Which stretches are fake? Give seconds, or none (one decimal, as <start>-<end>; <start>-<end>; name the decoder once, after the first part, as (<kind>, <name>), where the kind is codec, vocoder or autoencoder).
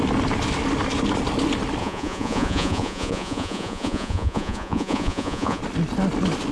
1.8-5.6 (vocoder, Vocos)